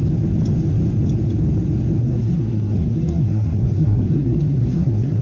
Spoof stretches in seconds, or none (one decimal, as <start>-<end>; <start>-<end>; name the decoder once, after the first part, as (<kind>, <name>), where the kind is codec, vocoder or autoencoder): 2.0-5.2 (codec, SNAC)

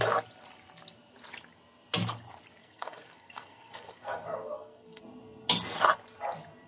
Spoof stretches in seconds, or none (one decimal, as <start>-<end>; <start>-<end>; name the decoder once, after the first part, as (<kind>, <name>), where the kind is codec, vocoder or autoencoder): 2.6-5.0 (codec, SNAC)

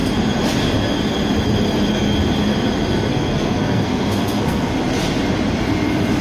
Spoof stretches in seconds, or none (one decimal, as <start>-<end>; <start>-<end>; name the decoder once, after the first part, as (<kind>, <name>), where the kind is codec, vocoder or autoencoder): 3.1-4.7 (codec, SNAC)

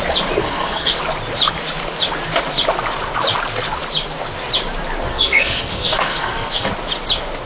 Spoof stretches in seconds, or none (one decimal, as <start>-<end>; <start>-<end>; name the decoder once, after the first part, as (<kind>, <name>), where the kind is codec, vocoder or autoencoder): 0.4-1.0 (codec, SNAC); 5.1-6.7

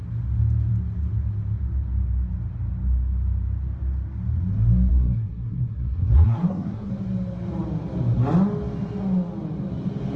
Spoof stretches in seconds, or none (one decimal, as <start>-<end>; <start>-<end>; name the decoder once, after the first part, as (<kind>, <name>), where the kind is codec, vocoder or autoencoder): 4.9-6.9 (codec, SNAC)